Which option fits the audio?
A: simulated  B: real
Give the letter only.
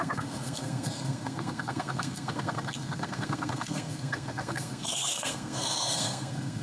A